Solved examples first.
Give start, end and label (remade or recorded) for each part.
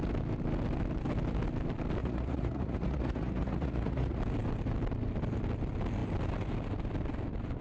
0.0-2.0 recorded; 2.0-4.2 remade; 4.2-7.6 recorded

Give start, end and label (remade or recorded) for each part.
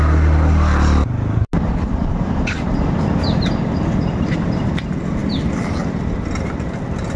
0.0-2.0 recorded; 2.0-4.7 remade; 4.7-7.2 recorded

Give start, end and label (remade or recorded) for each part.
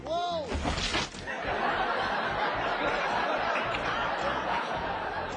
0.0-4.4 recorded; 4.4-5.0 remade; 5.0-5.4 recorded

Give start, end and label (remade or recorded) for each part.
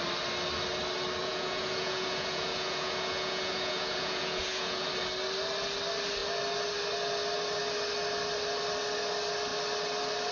0.0-1.2 recorded; 1.2-4.9 remade; 4.9-10.3 recorded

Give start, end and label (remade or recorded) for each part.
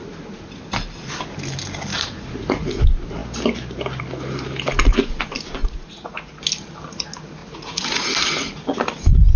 0.0-1.9 recorded; 1.9-2.8 remade; 2.8-5.6 recorded; 5.6-6.4 remade; 6.4-7.4 recorded; 7.4-8.1 remade; 8.1-9.4 recorded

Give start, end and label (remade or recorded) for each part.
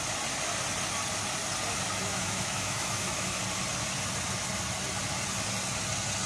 0.0-2.0 recorded; 2.0-3.4 remade; 3.4-6.3 recorded